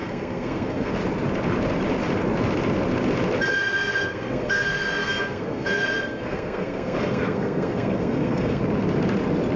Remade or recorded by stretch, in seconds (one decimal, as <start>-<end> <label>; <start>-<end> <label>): 0.0-0.9 remade; 0.9-3.6 recorded; 3.6-8.6 remade; 8.6-9.6 recorded